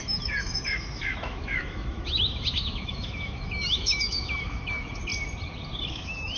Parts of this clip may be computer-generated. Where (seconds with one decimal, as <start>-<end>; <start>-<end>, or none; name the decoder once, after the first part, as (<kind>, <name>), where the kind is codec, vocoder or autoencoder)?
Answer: 0.0-5.1 (autoencoder, DAC-VAE); 5.9-6.4